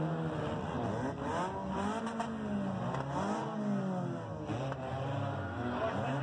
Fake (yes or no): no